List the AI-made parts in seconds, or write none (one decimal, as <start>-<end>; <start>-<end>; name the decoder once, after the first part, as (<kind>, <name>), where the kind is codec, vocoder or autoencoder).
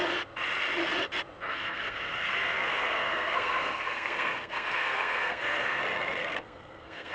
1.5-5.8 (codec, SNAC); 6.2-7.1